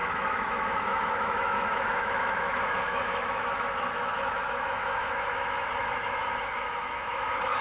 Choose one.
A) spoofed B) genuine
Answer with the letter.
A